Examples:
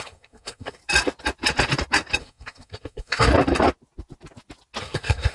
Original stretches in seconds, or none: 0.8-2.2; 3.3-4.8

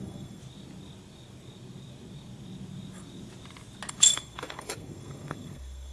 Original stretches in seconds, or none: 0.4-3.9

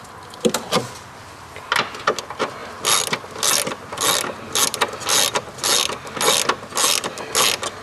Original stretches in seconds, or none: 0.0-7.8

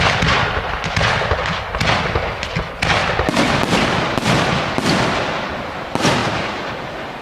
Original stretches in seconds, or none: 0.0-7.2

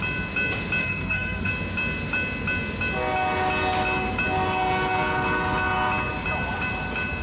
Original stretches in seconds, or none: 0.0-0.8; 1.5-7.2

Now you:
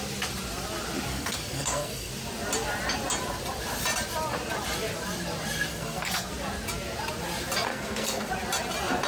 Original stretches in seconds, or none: 0.0-1.1; 2.1-5.7; 6.3-7.7; 8.3-9.1